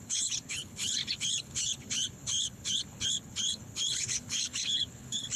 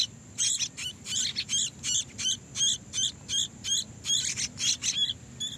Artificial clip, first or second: first